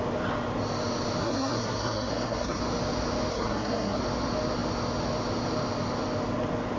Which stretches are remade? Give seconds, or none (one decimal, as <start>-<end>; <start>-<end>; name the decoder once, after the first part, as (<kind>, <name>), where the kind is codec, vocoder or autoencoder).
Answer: 1.2-2.6 (codec, SNAC); 3.3-4.0

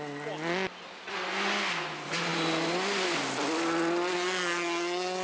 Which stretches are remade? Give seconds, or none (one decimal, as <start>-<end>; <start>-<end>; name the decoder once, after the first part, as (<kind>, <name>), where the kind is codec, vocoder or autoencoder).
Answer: none

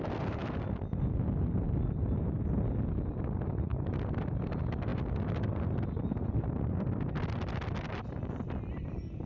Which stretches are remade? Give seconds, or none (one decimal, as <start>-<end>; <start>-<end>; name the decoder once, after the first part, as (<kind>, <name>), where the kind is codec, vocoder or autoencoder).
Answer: 0.4-2.0 (vocoder, BigVGAN v2); 3.7-4.5